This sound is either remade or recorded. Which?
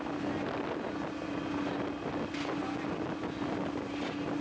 recorded